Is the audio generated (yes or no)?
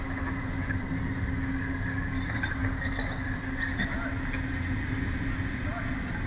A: no